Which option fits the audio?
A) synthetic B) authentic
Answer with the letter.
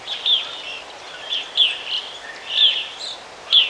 B